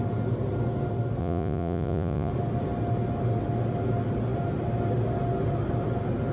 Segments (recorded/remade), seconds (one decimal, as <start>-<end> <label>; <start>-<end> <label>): 0.0-1.2 recorded; 1.2-2.3 remade; 2.3-6.3 recorded